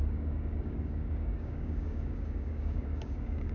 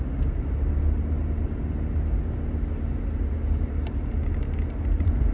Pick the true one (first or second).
second